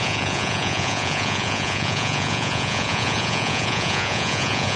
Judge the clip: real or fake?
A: fake